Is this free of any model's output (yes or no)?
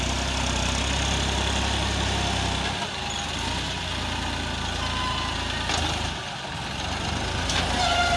yes